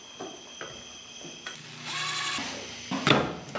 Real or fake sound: real